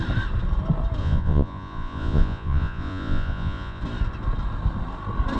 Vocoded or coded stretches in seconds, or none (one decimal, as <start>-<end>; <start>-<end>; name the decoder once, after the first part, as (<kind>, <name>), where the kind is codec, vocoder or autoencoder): 1.0-3.8 (vocoder, Vocos)